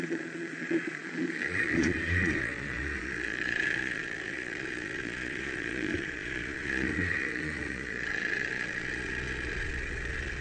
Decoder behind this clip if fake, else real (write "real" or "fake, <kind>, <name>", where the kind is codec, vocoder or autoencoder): fake, vocoder, Vocos